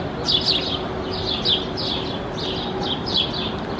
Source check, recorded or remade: recorded